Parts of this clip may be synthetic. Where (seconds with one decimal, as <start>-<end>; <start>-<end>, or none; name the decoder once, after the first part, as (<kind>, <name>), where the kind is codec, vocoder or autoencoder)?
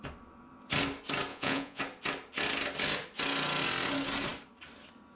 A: 1.3-1.8 (vocoder, Vocos)